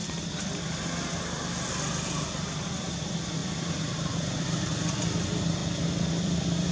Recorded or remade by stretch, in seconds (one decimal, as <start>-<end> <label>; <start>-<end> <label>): 0.0-3.4 recorded; 3.4-4.7 remade; 4.7-6.7 recorded